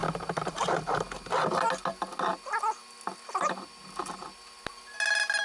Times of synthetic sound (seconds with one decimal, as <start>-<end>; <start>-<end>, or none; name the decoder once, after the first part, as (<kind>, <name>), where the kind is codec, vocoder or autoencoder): 0.0-0.7 (vocoder, BigVGAN v2)